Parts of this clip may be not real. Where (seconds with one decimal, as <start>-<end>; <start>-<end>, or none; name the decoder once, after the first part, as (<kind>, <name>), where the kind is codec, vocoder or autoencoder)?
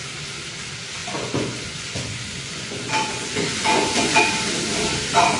1.0-4.2 (vocoder, Vocos)